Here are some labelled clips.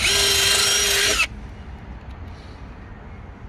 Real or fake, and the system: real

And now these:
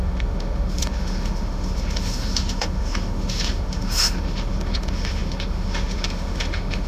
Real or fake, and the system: fake, autoencoder, DAC-VAE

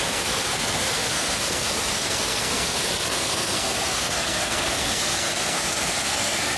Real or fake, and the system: fake, codec, SNAC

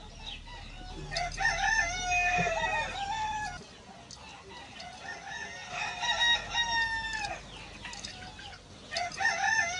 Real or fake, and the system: real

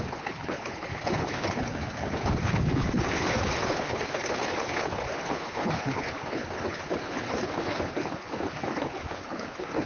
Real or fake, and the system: fake, codec, HILCodec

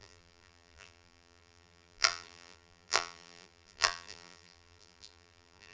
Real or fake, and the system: fake, vocoder, BigVGAN v2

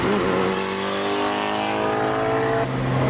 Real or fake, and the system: real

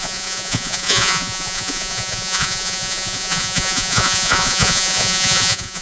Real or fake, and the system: fake, vocoder, Vocos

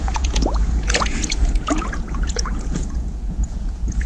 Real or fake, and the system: fake, vocoder, Vocos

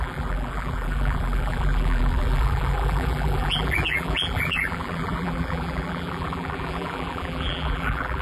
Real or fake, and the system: fake, vocoder, BigVGAN v2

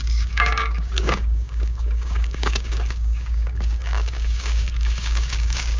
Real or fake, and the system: fake, codec, DAC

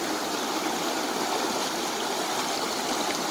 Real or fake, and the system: real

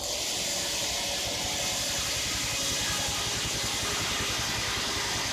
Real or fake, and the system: real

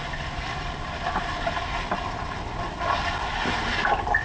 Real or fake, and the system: real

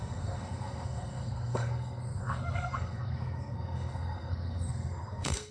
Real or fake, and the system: fake, codec, SNAC